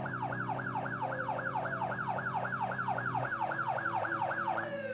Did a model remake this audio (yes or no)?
yes